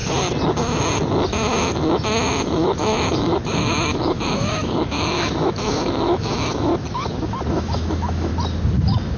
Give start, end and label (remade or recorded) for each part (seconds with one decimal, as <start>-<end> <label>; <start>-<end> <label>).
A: 0.0-1.9 recorded; 1.9-6.7 remade; 6.7-7.5 recorded; 7.5-8.3 remade; 8.3-9.2 recorded